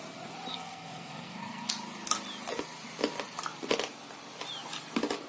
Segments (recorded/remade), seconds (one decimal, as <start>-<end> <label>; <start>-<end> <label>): 0.0-0.5 recorded; 0.5-1.7 remade; 1.7-5.3 recorded